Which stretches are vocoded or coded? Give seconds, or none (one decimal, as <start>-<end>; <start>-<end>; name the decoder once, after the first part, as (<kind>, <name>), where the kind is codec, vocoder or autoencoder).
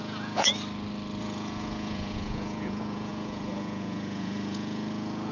0.0-0.5 (vocoder, Vocos); 1.2-5.3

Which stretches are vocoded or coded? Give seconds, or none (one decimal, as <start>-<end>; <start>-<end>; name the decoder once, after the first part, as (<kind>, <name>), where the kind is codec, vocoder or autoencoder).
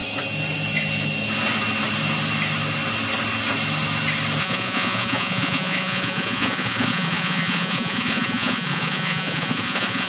4.4-10.1 (vocoder, Vocos)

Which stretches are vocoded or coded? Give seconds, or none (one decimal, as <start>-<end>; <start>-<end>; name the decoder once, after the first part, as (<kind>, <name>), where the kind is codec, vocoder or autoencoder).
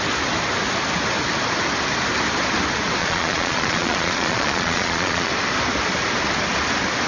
3.0-5.3 (vocoder, Vocos)